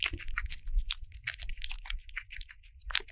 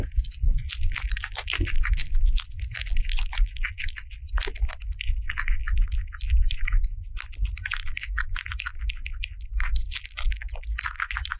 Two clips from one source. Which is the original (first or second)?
second